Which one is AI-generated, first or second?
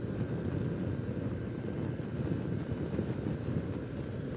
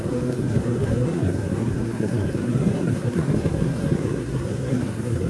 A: second